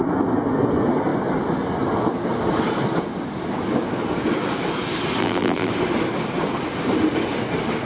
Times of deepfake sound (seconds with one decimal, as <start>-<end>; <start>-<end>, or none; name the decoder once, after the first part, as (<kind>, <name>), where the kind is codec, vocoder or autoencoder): 5.2-5.7 (vocoder, BigVGAN v2)